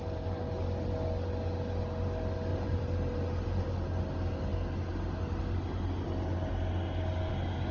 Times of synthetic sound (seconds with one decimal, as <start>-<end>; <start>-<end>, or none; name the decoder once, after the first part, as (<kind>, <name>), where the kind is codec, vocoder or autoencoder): 2.5-3.7 (vocoder, BigVGAN v2)